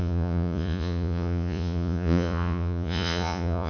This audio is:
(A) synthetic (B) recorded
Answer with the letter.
A